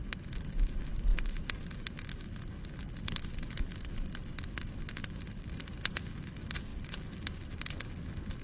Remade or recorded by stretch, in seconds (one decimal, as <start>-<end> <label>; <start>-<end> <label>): 0.0-8.4 recorded